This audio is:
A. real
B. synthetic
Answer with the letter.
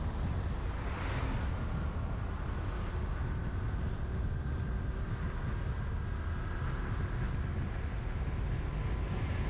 A